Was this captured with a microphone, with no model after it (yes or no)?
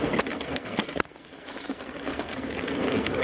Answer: no